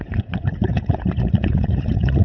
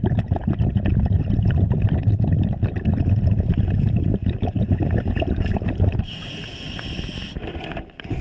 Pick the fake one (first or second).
first